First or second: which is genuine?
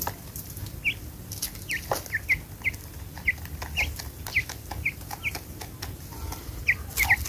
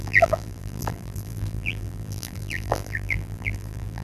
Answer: first